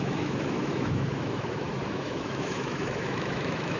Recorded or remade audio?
remade